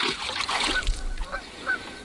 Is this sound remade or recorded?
remade